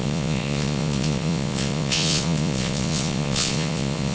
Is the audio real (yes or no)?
no